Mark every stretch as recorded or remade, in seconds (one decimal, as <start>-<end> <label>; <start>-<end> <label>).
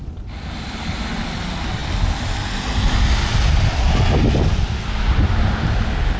0.0-6.2 recorded